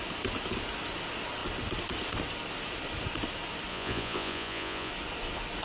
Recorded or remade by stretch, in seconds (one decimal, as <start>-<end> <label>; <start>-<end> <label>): 0.0-3.7 recorded; 3.7-4.9 remade; 4.9-5.6 recorded